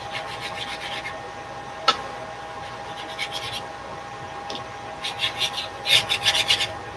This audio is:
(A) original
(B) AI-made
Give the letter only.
A